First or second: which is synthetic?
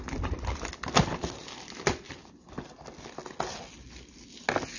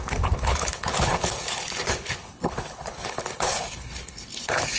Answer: second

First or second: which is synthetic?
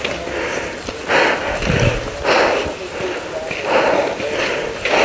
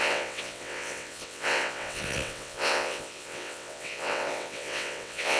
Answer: second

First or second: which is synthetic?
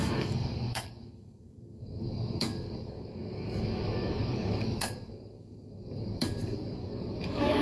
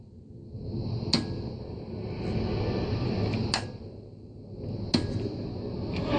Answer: first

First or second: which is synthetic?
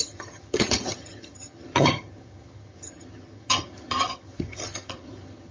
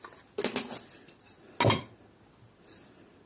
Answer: first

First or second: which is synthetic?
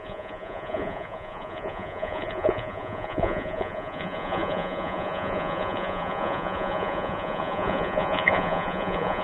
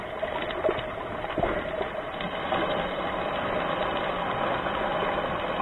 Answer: first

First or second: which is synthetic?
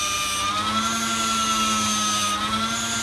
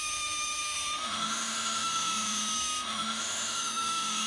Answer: second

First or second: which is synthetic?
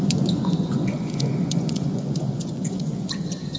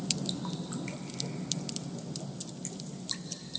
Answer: first